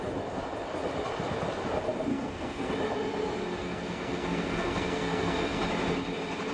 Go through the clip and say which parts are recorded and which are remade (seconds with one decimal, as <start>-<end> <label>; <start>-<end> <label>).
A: 0.0-2.1 recorded; 2.1-2.7 remade; 2.7-3.6 recorded; 3.6-5.6 remade; 5.6-6.5 recorded